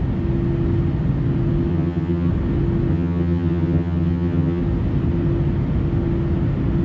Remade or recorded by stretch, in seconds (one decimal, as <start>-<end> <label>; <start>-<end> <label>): 0.0-1.7 recorded; 1.7-2.3 remade; 2.3-2.9 recorded; 2.9-4.6 remade; 4.6-6.8 recorded